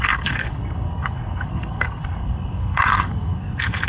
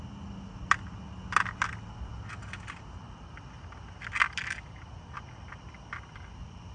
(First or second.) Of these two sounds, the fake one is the first